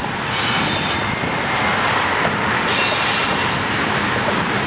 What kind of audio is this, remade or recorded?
recorded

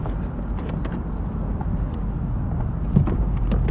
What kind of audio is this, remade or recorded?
recorded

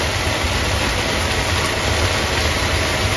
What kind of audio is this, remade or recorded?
recorded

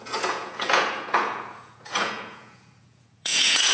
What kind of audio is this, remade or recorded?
remade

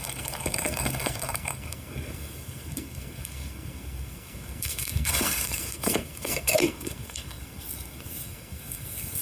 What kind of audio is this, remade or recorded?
remade